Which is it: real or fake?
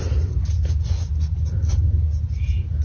real